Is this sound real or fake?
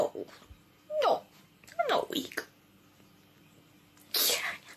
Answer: real